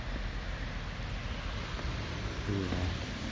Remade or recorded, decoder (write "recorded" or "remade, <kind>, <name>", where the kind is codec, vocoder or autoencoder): recorded